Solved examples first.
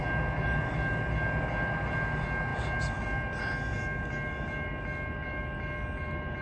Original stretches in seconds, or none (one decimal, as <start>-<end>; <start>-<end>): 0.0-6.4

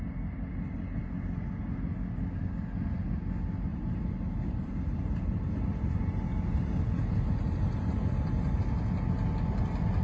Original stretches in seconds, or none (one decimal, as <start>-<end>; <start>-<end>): 0.0-0.5; 1.0-3.7; 8.6-10.0

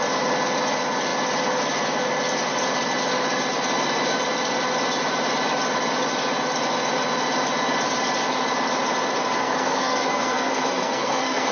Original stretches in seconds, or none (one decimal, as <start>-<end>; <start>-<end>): 0.0-9.4

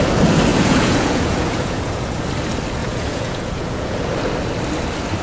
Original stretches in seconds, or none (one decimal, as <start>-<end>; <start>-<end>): 0.0-0.5; 2.2-2.8; 4.1-5.2

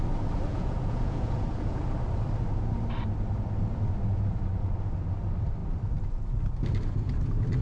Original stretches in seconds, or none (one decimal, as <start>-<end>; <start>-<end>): 0.0-0.5; 1.8-7.6